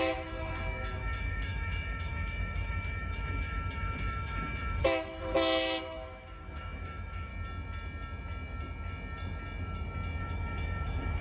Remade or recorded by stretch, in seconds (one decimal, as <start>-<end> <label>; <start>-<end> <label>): 0.0-7.3 remade; 7.3-10.2 recorded; 10.2-11.2 remade